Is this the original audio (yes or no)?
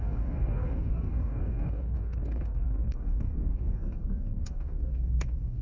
no